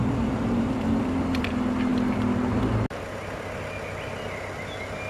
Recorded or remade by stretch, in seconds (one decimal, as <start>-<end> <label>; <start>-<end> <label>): 0.0-1.9 remade; 1.9-5.1 recorded

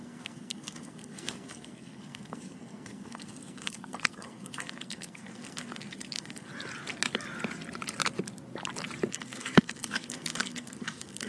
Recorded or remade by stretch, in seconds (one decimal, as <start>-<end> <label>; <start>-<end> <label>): 0.0-6.5 remade; 6.5-9.1 recorded; 9.1-11.3 remade

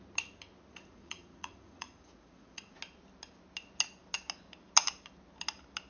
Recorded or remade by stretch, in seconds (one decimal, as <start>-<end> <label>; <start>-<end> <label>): 0.0-0.7 recorded; 0.7-2.8 remade; 2.8-5.9 recorded